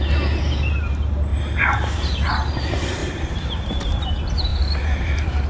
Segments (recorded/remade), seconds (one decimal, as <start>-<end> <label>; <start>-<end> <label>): 0.0-3.0 recorded; 3.0-4.1 remade; 4.1-4.5 recorded; 4.5-5.5 remade